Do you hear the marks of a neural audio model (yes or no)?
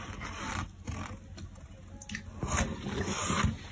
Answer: no